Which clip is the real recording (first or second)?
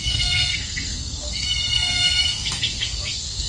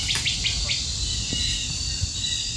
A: second